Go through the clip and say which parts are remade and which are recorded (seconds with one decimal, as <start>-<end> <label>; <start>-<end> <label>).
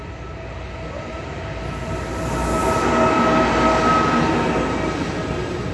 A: 0.0-5.7 recorded